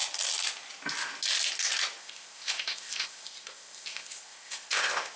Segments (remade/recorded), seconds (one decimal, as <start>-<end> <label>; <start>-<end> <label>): 0.0-2.0 recorded; 2.0-5.2 remade

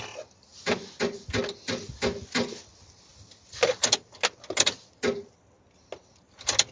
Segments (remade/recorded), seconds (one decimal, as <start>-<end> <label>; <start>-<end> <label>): 0.0-6.7 recorded

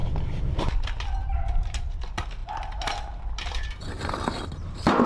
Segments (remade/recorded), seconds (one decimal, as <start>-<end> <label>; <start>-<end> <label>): 0.0-5.1 remade